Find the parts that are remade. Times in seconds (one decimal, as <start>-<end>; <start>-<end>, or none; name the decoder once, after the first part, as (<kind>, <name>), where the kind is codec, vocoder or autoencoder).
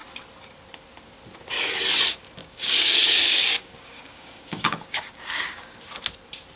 2.4-5.8 (codec, DAC)